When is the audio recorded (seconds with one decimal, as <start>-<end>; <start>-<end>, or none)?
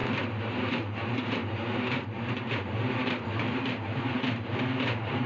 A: 1.4-2.9